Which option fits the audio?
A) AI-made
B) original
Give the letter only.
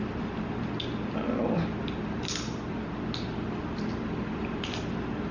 B